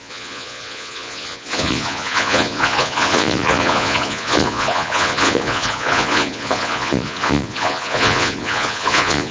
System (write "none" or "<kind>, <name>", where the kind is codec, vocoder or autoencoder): vocoder, Vocos